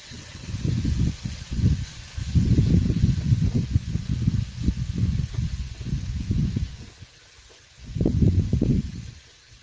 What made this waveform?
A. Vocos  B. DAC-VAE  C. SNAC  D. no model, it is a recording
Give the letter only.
A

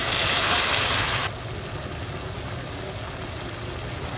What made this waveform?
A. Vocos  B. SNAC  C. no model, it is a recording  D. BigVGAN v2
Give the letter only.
C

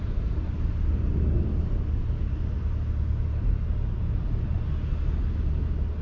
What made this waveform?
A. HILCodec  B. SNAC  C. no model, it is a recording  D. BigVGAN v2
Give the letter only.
C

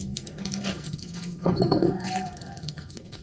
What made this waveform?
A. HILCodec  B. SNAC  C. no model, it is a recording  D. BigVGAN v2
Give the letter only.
B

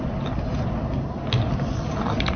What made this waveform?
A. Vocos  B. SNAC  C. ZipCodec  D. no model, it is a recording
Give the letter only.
D